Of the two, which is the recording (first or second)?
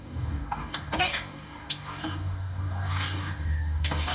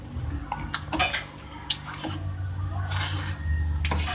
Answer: second